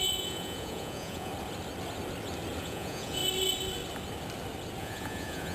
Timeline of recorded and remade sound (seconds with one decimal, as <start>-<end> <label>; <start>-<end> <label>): 0.0-1.3 remade; 1.3-2.6 recorded; 2.6-3.2 remade; 3.2-4.8 recorded; 4.8-5.5 remade